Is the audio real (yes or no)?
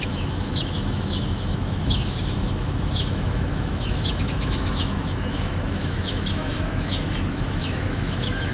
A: no